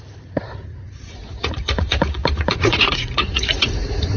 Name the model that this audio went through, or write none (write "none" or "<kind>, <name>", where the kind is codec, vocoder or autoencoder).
vocoder, Vocos